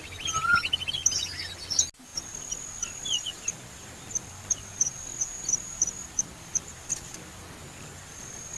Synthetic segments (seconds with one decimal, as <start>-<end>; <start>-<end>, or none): none